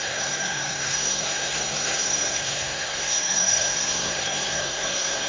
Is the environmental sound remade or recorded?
remade